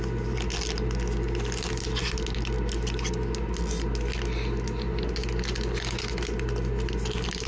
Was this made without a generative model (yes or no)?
yes